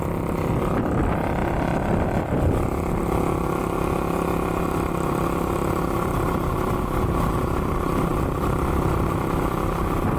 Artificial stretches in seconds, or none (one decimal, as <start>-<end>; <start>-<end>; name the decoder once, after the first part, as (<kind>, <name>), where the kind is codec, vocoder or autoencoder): none